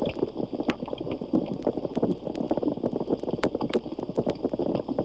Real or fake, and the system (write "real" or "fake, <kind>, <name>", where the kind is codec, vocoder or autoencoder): real